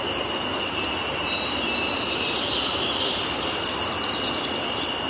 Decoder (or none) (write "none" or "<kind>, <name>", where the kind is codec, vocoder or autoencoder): none